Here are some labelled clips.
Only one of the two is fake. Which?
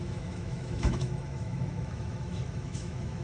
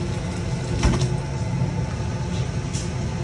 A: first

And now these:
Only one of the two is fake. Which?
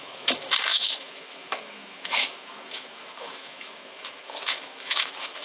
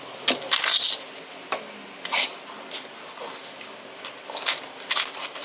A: first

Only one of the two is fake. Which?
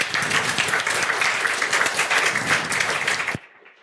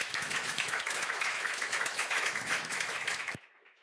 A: second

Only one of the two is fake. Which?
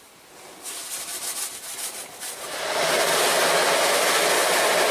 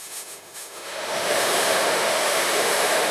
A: second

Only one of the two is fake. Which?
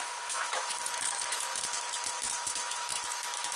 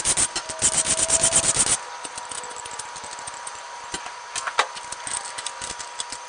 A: first